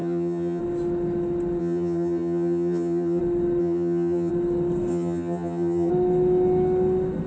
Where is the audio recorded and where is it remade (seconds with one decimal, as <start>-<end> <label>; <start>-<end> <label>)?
0.0-0.6 remade; 0.6-1.6 recorded; 1.6-3.2 remade; 3.2-3.6 recorded; 3.6-4.3 remade; 4.3-4.9 recorded; 4.9-5.9 remade; 5.9-7.3 recorded